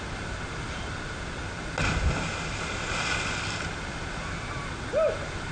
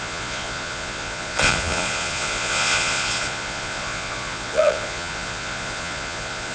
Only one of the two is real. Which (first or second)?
first